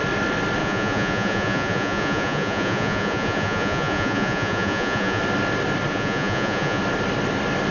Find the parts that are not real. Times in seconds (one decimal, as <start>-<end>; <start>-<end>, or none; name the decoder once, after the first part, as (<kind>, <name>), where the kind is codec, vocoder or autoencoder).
0.6-5.2 (vocoder, Vocos); 5.9-6.8